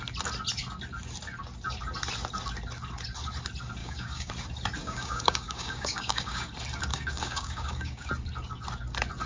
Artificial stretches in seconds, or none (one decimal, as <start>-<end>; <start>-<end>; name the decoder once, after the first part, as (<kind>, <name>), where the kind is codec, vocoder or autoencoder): 3.8-4.3 (codec, DAC); 4.8-6.5; 6.9-8.1